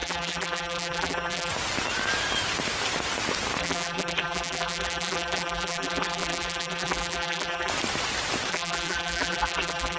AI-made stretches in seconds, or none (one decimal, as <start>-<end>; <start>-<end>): 0.0-1.5; 3.6-7.7; 8.5-10.0